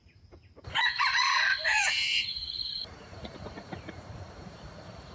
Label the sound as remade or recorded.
remade